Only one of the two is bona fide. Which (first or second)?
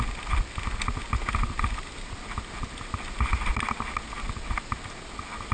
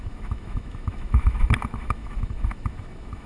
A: first